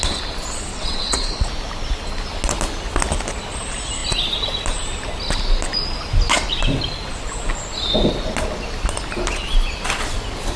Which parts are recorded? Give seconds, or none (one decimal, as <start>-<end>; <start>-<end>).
0.0-0.7; 1.4-10.6